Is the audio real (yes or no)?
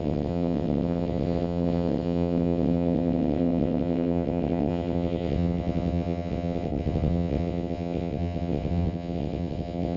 no